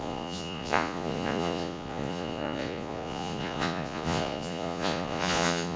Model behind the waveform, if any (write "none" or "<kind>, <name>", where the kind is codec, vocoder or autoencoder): vocoder, Vocos